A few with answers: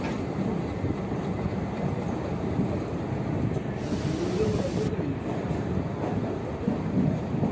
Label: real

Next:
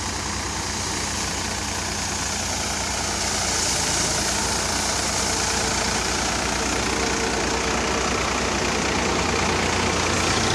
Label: real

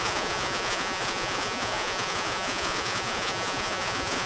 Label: fake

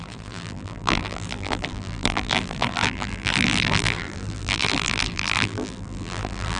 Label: fake